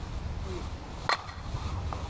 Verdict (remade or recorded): recorded